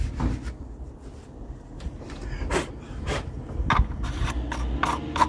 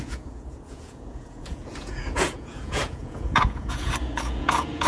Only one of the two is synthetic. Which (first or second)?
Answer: second